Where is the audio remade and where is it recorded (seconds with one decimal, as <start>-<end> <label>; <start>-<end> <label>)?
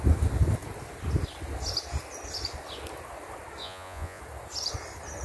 0.0-3.6 recorded; 3.6-4.2 remade; 4.2-5.2 recorded